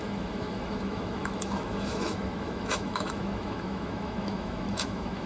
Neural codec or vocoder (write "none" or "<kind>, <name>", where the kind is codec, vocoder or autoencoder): autoencoder, DAC-VAE